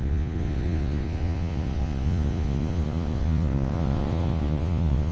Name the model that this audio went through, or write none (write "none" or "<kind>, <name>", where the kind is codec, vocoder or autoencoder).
vocoder, Vocos